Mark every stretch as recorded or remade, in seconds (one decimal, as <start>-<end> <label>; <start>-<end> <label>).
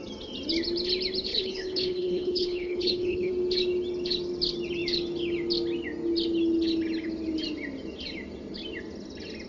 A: 0.0-1.3 recorded; 1.3-3.3 remade; 3.3-9.5 recorded